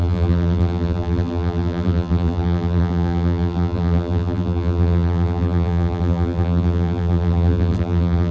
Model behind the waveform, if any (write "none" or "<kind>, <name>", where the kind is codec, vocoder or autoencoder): vocoder, BigVGAN v2